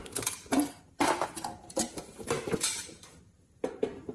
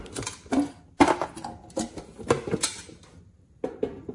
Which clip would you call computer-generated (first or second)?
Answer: first